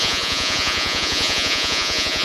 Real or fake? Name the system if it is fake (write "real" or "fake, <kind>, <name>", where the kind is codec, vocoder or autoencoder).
fake, vocoder, Vocos